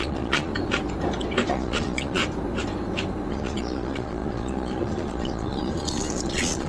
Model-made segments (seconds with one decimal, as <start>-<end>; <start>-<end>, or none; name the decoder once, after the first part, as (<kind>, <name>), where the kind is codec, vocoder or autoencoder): 0.0-0.5 (vocoder, Vocos); 1.5-2.2; 3.3-6.7